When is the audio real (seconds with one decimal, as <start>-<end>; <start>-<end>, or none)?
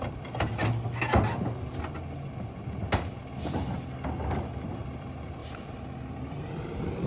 0.6-4.4